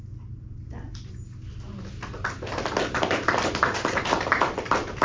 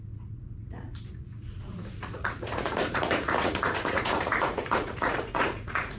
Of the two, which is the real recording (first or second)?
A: first